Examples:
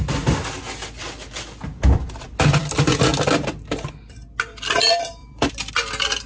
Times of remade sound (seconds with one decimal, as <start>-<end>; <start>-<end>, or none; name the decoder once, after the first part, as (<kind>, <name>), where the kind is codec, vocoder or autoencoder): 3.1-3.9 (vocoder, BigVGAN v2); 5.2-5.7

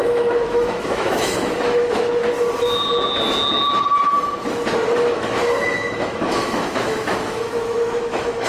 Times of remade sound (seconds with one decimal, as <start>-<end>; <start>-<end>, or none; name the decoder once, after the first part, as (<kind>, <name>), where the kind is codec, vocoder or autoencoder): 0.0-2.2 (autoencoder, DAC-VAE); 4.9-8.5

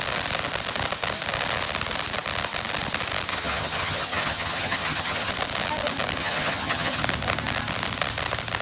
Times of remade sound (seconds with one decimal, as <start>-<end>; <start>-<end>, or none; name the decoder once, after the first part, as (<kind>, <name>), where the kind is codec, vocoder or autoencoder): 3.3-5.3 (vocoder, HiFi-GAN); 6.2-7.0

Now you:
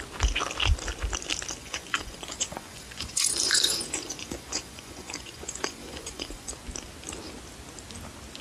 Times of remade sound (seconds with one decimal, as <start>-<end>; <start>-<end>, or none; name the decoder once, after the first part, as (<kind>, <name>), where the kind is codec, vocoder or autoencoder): 1.6-6.5 (vocoder, Vocos)